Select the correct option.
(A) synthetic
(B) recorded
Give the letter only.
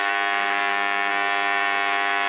A